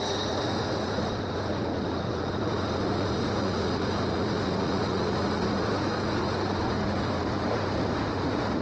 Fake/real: fake